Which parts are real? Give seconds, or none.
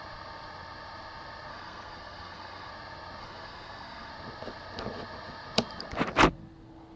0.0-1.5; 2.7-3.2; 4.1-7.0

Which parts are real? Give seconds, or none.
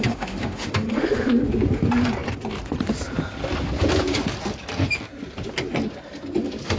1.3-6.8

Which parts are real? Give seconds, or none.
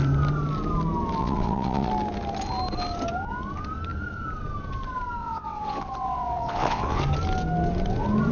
0.0-1.2; 1.9-5.2; 7.0-8.3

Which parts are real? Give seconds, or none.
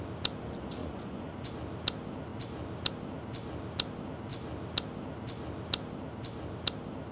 0.0-0.8; 1.5-7.1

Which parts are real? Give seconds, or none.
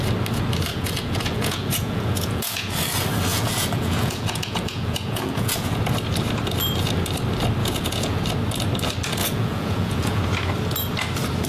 0.0-0.7; 2.7-3.3; 5.8-7.6; 8.2-9.2; 10.2-11.5